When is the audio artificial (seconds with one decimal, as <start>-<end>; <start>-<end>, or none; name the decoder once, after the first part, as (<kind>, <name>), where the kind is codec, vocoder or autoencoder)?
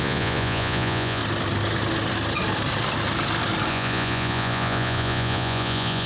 0.0-1.2 (vocoder, Vocos); 3.7-6.1